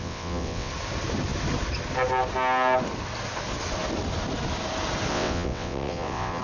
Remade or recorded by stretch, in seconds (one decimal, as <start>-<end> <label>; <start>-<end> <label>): 0.0-0.7 remade; 0.7-5.1 recorded; 5.1-6.4 remade